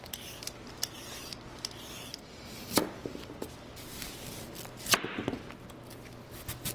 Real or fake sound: real